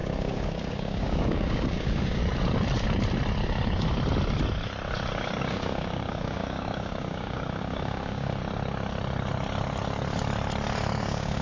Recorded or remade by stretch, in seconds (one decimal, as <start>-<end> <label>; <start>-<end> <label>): 0.0-2.2 remade; 2.2-5.4 recorded; 5.4-8.4 remade; 8.4-11.0 recorded; 11.0-11.4 remade